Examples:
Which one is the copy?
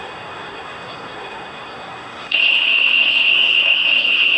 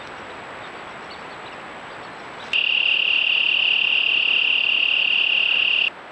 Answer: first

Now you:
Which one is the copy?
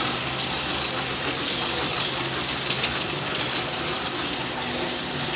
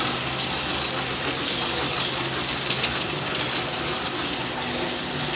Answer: first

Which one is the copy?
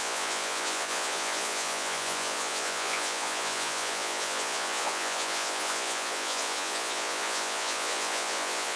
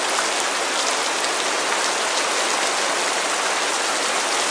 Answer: first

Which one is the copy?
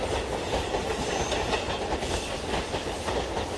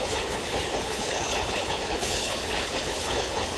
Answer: second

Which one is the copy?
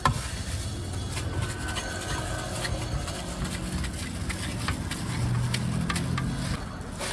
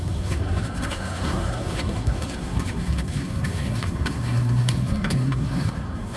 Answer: second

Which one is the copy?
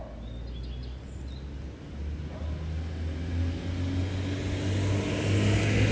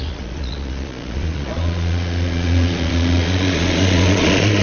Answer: second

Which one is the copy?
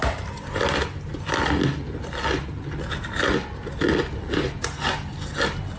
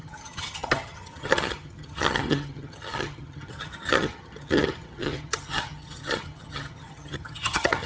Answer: second